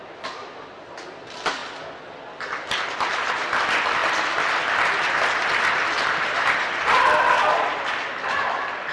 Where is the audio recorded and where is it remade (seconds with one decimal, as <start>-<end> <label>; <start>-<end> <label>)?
0.0-8.9 recorded